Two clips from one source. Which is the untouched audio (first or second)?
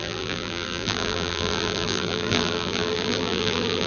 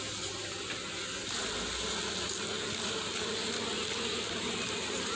second